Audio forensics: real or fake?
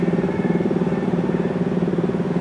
real